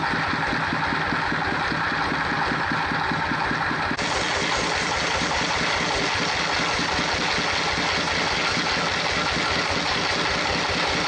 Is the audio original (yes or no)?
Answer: yes